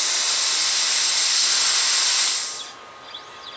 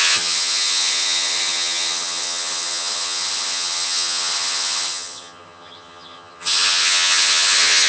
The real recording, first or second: first